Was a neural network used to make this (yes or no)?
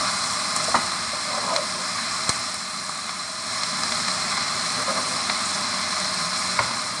no